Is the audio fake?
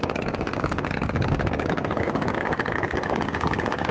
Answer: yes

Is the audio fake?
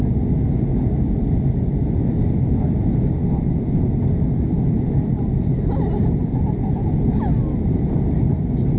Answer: no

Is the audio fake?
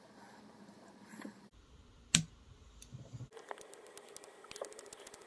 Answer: no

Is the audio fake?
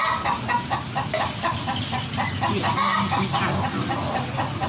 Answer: no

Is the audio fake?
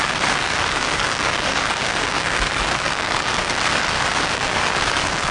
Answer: yes